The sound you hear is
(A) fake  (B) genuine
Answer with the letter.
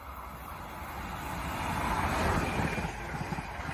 B